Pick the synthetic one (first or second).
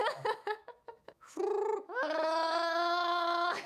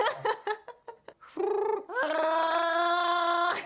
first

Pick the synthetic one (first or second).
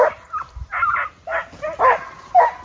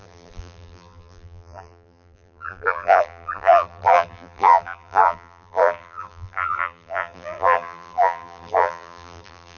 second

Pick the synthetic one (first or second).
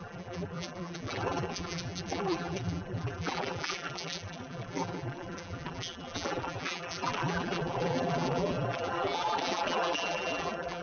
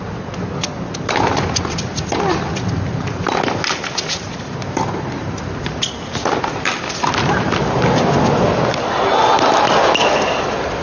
first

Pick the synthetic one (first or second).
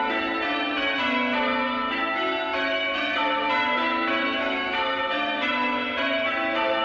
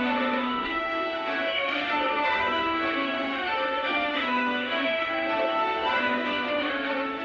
second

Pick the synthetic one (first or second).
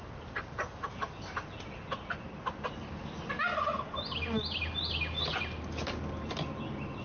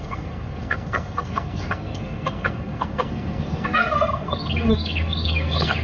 second